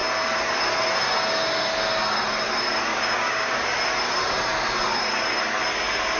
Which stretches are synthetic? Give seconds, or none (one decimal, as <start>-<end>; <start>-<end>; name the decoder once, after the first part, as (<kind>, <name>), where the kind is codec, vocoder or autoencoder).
2.9-3.6 (codec, DAC)